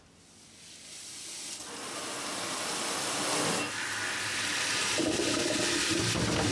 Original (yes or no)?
yes